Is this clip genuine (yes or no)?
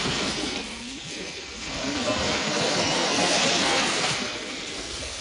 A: no